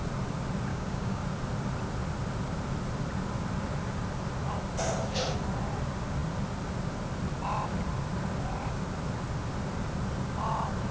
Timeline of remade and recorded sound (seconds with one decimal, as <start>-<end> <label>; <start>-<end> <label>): 0.0-0.7 recorded; 0.7-1.2 remade; 1.2-10.9 recorded